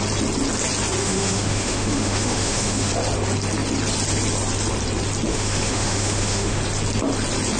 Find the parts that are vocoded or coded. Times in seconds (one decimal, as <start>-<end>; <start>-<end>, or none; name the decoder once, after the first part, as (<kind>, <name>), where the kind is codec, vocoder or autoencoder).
1.0-2.9 (autoencoder, DAC-VAE); 5.3-6.6